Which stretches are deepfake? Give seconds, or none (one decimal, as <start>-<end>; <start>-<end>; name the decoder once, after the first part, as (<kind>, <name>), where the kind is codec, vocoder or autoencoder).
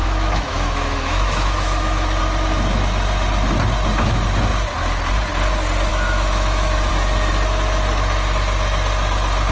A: 0.0-2.2 (autoencoder, DAC-VAE); 5.9-6.9